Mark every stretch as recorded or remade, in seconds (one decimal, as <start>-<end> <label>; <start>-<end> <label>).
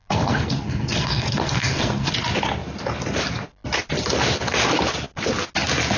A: 0.0-2.1 remade; 2.1-6.0 recorded